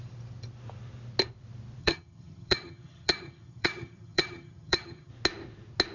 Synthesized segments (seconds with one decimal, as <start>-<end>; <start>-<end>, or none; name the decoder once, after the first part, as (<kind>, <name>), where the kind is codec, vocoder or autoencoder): 1.8-5.1 (vocoder, HiFi-GAN)